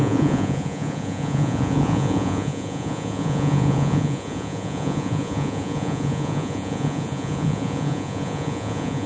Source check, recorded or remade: remade